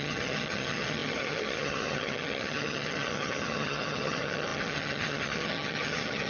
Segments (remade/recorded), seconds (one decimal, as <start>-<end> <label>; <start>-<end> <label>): 0.0-6.3 remade